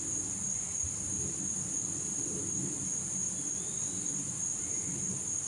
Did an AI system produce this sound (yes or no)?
no